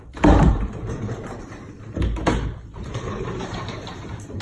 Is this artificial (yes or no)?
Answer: yes